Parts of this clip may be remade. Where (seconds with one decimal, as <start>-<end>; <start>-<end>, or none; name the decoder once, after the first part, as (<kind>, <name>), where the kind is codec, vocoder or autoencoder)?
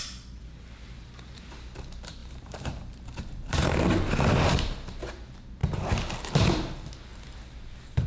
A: 2.2-4.1 (vocoder, BigVGAN v2); 7.1-8.1